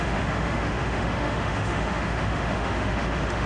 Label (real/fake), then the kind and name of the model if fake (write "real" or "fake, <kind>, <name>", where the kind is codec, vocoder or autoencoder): fake, autoencoder, DAC-VAE